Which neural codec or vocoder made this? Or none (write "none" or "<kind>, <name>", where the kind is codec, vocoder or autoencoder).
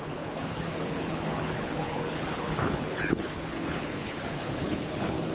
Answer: codec, HILCodec